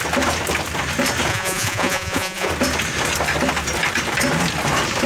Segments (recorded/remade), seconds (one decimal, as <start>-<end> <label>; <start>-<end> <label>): 0.0-1.3 recorded; 1.3-2.5 remade; 2.5-5.1 recorded